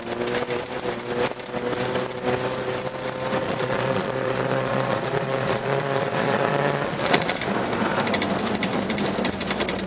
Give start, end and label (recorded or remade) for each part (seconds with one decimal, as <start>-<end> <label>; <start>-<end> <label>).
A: 0.0-3.4 recorded; 3.4-7.4 remade; 7.4-9.9 recorded